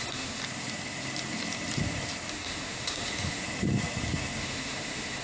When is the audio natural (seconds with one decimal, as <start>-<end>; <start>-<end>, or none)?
0.4-2.3; 3.4-4.4